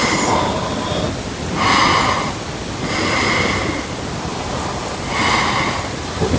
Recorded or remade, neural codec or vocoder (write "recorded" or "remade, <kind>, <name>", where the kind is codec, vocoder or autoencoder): recorded